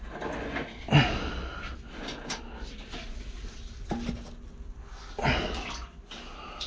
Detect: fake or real real